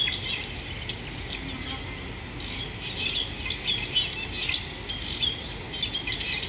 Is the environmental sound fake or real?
real